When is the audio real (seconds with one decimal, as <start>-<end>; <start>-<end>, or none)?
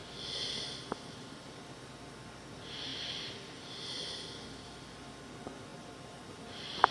0.0-6.9